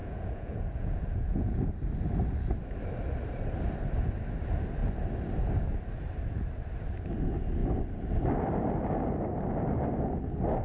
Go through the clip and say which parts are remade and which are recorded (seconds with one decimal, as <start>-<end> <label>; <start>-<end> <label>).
0.0-1.7 remade; 1.7-10.6 recorded